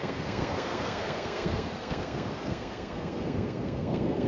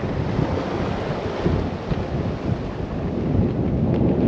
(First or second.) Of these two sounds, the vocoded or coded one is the first